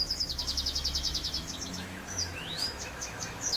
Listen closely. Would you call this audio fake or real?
fake